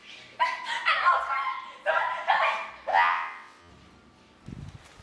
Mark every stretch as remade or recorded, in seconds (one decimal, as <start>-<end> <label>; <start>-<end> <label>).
0.0-2.9 recorded; 2.9-3.7 remade; 3.7-5.0 recorded